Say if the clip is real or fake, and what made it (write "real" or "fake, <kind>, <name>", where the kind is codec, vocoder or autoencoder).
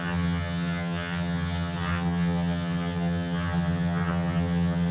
fake, vocoder, HiFi-GAN